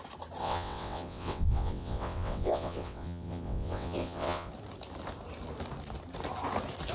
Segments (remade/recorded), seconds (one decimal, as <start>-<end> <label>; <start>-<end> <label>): 0.0-0.4 recorded; 0.4-4.5 remade; 4.5-6.9 recorded